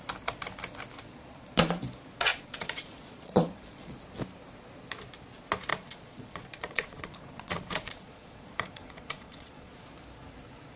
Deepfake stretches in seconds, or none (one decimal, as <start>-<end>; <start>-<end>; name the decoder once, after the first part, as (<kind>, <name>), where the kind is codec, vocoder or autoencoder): 1.1-1.8 (vocoder, Vocos); 2.3-3.9; 5.7-9.7